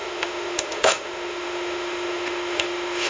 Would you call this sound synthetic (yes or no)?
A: yes